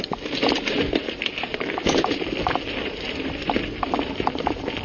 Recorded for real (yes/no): no